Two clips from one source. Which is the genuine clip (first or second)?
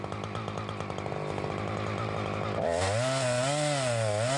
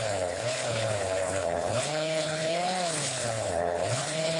first